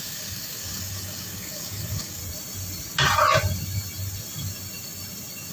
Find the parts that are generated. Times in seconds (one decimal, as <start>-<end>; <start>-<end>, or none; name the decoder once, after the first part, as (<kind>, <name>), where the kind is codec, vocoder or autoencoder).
0.0-2.2 (codec, DAC)